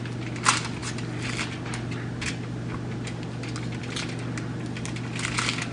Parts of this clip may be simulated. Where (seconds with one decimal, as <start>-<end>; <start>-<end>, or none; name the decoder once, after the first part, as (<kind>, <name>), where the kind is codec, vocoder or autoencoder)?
none